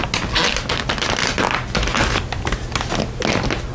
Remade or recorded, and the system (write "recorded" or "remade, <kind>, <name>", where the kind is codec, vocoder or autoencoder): recorded